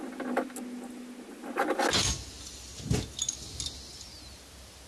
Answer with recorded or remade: recorded